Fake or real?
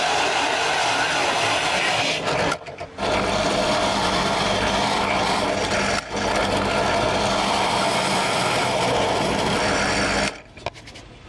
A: real